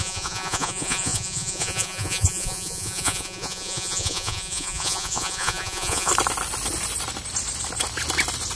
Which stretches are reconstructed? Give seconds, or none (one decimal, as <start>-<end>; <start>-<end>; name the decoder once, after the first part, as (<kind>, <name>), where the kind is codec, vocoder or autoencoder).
0.0-6.1 (vocoder, Vocos)